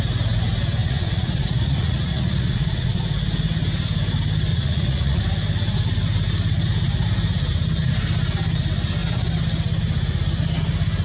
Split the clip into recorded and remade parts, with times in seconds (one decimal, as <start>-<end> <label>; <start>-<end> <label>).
0.0-0.8 recorded; 0.8-3.0 remade; 3.0-4.5 recorded; 4.5-5.2 remade; 5.2-11.0 recorded